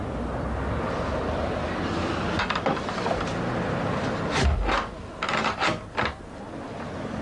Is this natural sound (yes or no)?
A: yes